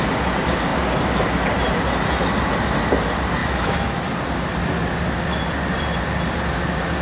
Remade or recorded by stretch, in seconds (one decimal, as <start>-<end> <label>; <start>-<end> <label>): 0.0-3.4 recorded; 3.4-4.0 remade; 4.0-7.0 recorded